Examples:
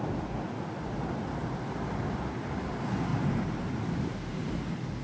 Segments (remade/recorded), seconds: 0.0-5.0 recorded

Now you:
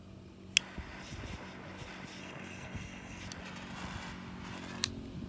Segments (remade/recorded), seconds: 0.0-2.2 recorded; 2.2-3.2 remade; 3.2-5.3 recorded

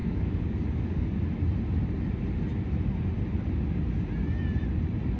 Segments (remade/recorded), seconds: 0.0-1.2 remade; 1.2-5.2 recorded